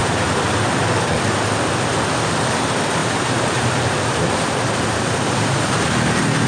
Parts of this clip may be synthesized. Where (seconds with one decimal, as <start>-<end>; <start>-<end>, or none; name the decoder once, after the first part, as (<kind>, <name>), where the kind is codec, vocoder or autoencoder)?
0.0-0.8 (vocoder, BigVGAN v2); 3.0-5.7